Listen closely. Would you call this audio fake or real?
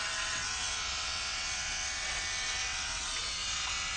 fake